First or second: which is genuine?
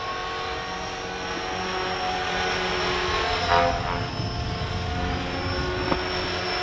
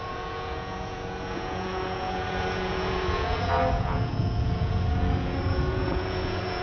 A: first